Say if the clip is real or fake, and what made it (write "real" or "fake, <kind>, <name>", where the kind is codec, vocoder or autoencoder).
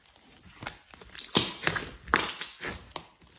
real